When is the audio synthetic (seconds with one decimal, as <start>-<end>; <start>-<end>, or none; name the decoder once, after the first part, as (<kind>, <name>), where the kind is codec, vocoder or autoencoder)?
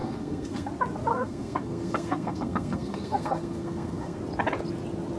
0.0-0.7 (codec, SNAC); 1.1-4.2